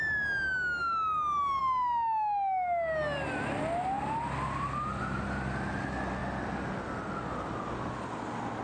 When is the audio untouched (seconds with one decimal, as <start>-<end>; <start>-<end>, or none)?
0.0-8.6